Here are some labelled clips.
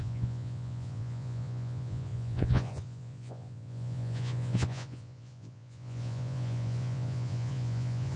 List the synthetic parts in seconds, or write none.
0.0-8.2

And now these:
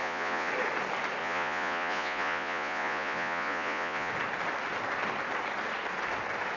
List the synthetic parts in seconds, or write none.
0.0-0.5; 1.2-4.1

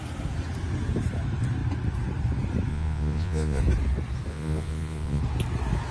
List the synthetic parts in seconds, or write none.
2.7-3.6; 4.3-5.2

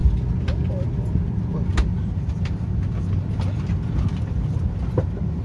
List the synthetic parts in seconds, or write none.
none

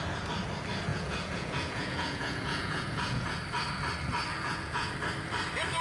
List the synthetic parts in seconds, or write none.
0.9-3.4; 4.3-4.9

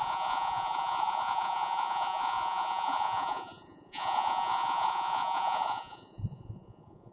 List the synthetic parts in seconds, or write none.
0.0-7.1